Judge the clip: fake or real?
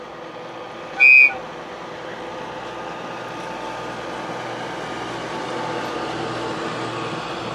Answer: real